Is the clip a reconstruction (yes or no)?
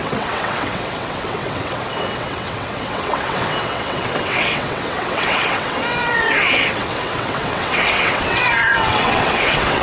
yes